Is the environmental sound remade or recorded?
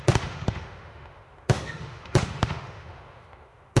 remade